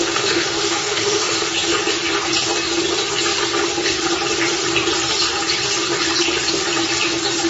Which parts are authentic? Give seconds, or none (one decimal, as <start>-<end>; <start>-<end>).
1.5-7.5